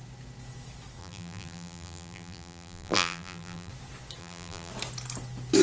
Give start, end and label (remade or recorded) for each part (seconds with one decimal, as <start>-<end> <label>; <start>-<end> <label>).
0.0-1.0 recorded; 1.0-3.7 remade; 3.7-4.2 recorded; 4.2-4.7 remade; 4.7-5.6 recorded